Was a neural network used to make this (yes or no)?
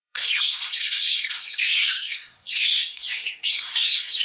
yes